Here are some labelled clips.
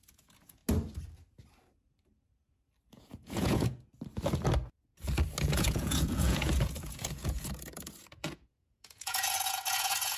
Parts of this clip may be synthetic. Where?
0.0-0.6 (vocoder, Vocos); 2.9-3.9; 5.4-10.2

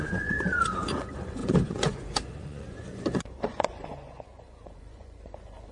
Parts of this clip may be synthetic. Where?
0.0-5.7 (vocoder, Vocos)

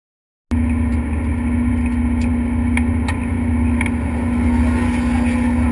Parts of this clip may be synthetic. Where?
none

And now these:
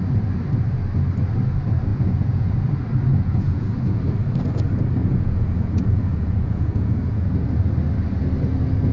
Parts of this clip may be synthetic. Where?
1.9-2.7 (vocoder, Vocos); 3.1-4.0; 5.0-7.3

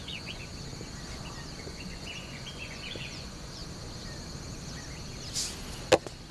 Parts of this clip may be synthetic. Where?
0.0-0.5 (vocoder, Vocos); 1.6-3.6

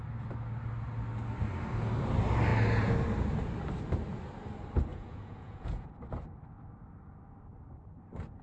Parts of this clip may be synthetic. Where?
4.9-6.0 (vocoder, Vocos)